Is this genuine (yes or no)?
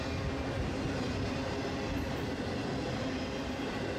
yes